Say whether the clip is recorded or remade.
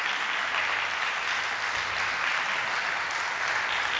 recorded